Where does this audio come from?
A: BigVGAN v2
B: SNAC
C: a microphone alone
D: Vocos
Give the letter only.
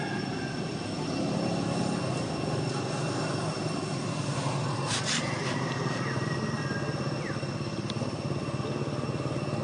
C